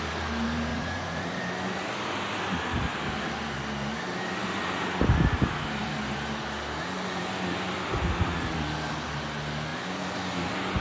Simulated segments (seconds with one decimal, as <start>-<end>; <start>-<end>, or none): 0.7-1.4